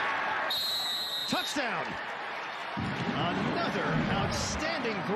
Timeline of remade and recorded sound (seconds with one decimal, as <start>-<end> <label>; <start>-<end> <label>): 0.0-1.2 recorded; 1.2-1.8 remade; 1.8-2.6 recorded; 2.6-4.2 remade; 4.2-5.2 recorded